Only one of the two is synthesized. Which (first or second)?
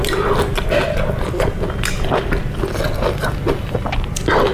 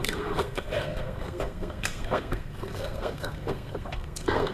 second